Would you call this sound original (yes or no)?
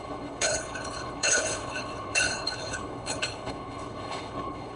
no